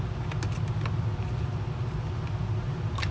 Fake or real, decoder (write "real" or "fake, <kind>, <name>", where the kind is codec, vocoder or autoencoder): real